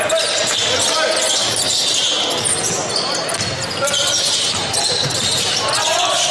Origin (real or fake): real